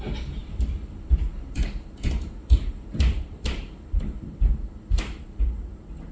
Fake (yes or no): no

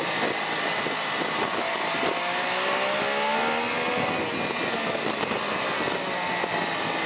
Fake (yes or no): no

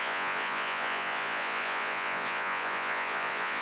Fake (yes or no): yes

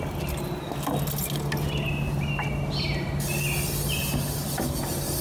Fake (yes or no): no